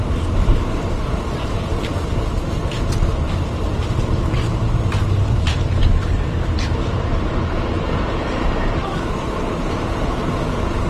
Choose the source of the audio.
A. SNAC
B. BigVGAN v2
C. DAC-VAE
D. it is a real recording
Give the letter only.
B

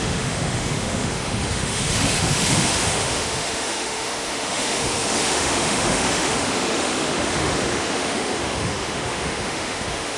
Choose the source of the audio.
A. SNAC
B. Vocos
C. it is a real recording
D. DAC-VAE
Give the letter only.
D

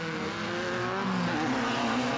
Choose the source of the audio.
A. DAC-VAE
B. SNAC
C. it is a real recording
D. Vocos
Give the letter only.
C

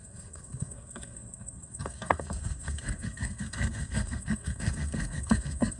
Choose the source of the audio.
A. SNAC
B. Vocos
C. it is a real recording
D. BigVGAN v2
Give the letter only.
A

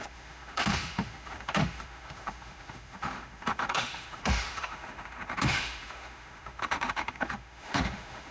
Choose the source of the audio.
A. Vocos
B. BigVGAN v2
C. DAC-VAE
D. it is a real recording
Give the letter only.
C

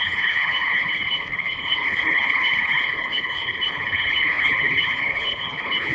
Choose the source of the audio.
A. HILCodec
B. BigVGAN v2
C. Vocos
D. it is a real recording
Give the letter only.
A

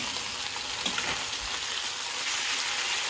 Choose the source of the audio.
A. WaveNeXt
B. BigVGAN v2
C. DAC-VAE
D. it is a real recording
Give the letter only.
D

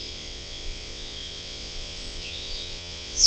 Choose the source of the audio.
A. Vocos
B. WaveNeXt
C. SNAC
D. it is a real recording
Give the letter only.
B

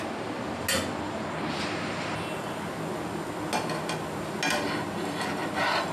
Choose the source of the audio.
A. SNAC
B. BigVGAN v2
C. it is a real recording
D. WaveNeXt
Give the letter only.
C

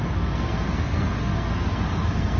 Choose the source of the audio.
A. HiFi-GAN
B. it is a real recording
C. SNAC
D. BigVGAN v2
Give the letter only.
C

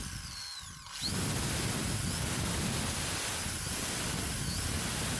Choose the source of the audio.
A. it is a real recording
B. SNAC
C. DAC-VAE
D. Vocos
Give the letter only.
A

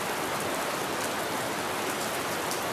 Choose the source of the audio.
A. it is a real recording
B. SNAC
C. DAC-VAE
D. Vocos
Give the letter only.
A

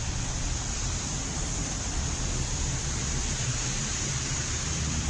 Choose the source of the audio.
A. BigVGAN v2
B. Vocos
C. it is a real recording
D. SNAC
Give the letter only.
A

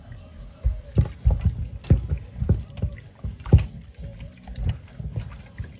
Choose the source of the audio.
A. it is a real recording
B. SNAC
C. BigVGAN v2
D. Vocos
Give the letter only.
A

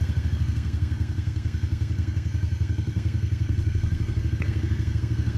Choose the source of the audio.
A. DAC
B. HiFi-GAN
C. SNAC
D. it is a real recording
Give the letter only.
C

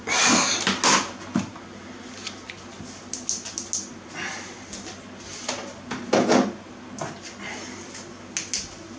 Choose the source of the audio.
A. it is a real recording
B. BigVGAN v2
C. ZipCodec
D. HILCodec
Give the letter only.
A